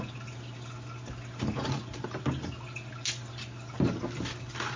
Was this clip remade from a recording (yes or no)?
no